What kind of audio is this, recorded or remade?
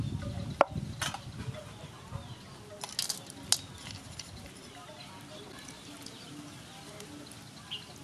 recorded